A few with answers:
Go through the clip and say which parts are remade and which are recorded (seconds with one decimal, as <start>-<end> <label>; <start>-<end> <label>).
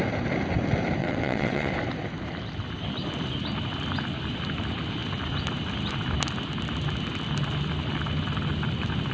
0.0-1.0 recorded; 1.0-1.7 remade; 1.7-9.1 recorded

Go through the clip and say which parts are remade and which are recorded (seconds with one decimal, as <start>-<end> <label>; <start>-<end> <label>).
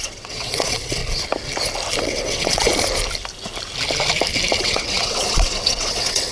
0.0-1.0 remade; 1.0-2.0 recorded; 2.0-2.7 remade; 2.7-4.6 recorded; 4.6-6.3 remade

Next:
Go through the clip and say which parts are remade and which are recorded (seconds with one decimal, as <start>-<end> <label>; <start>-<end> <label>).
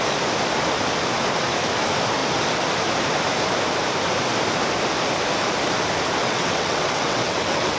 0.0-6.2 recorded; 6.2-7.8 remade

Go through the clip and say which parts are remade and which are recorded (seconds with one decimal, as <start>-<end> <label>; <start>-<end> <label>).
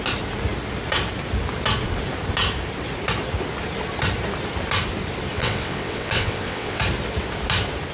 0.0-5.3 recorded; 5.3-6.8 remade; 6.8-7.9 recorded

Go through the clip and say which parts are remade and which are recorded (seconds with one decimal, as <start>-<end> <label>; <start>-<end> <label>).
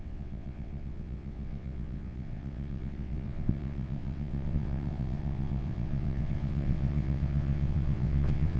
0.0-8.6 remade